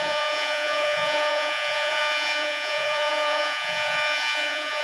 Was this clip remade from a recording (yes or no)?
yes